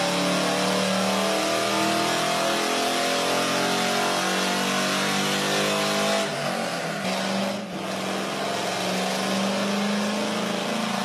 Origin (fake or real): real